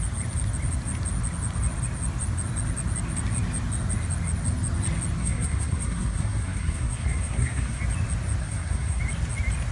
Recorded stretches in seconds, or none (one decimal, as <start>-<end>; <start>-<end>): 0.0-5.2; 7.8-8.4; 9.0-9.7